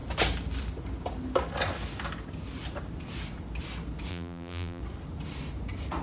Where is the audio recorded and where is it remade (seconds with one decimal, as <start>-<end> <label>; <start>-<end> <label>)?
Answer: 0.0-4.1 recorded; 4.1-4.8 remade; 4.8-6.0 recorded